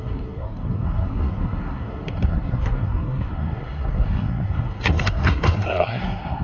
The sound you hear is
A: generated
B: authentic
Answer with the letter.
A